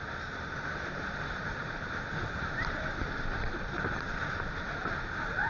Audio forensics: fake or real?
fake